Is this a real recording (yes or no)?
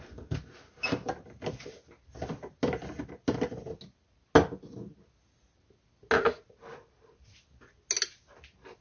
yes